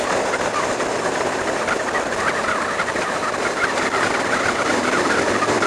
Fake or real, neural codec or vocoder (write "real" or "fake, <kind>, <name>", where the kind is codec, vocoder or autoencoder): fake, vocoder, BigVGAN v2